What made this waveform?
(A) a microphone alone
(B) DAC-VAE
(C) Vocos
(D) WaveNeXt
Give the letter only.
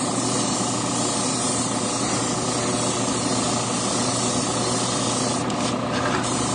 A